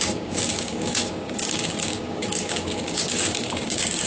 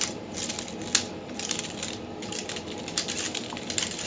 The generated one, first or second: first